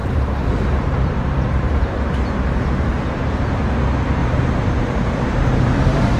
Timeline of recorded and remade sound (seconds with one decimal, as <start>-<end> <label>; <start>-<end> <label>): 0.0-3.7 remade; 3.7-4.2 recorded; 4.2-6.2 remade